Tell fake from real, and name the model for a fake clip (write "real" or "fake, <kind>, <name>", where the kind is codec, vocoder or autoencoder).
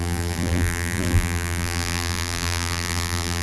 fake, vocoder, BigVGAN v2